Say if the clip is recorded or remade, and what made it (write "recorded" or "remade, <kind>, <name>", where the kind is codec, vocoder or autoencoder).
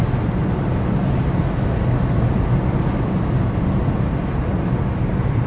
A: recorded